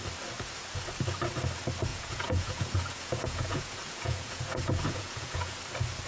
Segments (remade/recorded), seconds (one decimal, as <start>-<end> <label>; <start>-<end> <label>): 0.0-1.9 recorded; 1.9-5.6 remade; 5.6-6.1 recorded